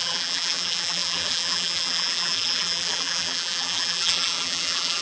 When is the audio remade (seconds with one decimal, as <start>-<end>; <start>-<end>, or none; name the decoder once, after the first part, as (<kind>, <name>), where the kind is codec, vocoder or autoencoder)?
0.0-5.0 (vocoder, BigVGAN v2)